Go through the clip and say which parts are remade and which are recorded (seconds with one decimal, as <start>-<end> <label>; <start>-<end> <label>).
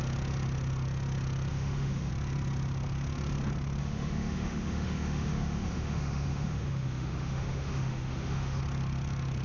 0.0-1.5 recorded; 1.5-2.1 remade; 2.1-3.8 recorded; 3.8-8.6 remade; 8.6-9.4 recorded